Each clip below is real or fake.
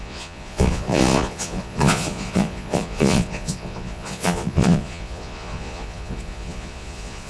fake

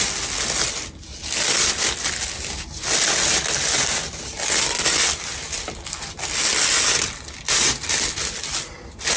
real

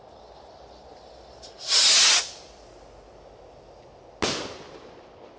real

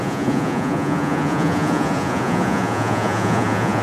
fake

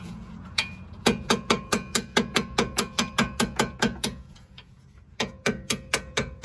fake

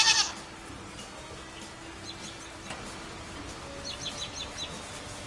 real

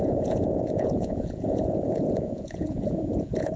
fake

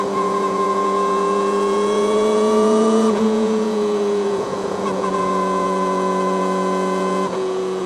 fake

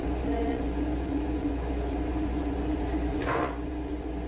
fake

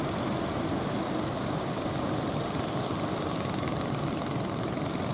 real